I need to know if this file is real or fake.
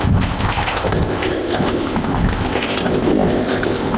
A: fake